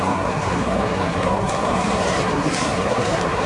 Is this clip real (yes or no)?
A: no